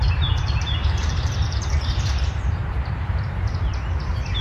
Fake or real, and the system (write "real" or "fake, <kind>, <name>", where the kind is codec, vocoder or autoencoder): fake, vocoder, BigVGAN v2